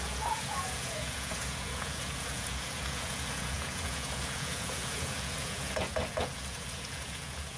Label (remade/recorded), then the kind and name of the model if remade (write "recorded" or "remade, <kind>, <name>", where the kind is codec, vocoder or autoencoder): remade, vocoder, Vocos